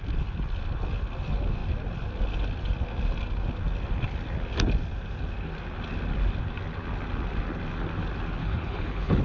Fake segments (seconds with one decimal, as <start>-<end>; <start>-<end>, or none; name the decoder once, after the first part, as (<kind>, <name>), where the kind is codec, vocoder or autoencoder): 8.4-9.2 (codec, HILCodec)